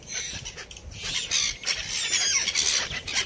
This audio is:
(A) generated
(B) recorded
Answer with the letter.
B